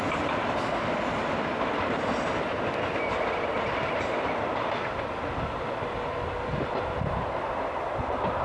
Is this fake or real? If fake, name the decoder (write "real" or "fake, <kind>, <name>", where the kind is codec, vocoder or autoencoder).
real